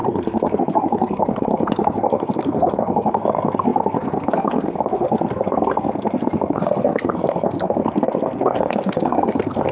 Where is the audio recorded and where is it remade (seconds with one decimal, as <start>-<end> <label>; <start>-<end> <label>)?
0.0-9.7 remade

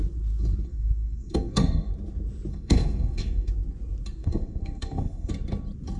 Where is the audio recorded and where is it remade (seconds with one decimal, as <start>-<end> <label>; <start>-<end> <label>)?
0.0-0.7 recorded; 0.7-1.9 remade; 1.9-2.5 recorded; 2.5-3.5 remade; 3.5-4.2 recorded; 4.2-5.3 remade; 5.3-6.0 recorded

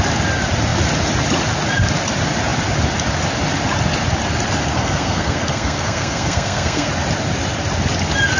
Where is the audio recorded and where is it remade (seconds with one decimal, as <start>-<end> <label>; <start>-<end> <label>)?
0.0-4.7 recorded; 4.7-6.9 remade; 6.9-8.4 recorded

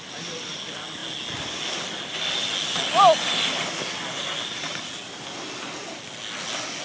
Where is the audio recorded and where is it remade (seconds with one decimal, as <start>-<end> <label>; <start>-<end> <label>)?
0.0-6.8 recorded

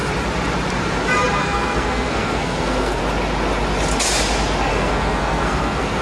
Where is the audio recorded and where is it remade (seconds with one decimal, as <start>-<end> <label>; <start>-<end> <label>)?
0.0-1.4 recorded; 1.4-3.0 remade; 3.0-4.7 recorded; 4.7-6.0 remade